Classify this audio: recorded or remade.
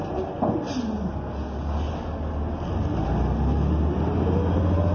recorded